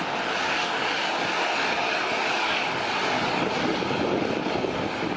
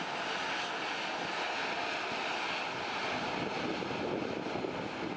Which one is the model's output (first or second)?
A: first